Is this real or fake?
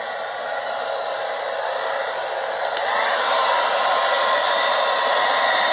real